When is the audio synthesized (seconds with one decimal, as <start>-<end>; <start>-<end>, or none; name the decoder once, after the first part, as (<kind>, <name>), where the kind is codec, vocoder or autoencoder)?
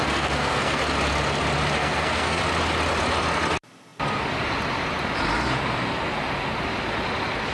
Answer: 0.0-0.8 (codec, SNAC); 1.8-2.4